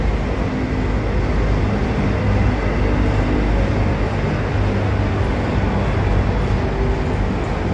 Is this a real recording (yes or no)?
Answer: yes